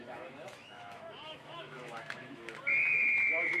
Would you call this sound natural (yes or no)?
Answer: no